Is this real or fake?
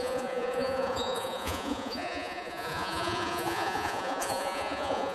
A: fake